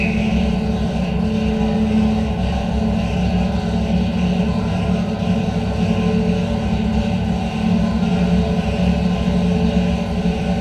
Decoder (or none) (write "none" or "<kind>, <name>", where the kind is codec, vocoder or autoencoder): none